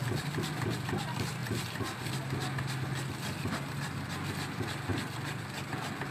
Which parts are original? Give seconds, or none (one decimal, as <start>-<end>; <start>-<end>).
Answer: 0.0-6.1